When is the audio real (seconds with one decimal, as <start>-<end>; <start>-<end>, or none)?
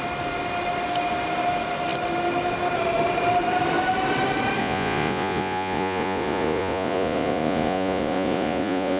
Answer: 0.0-4.6